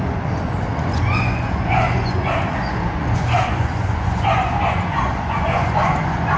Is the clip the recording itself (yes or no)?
no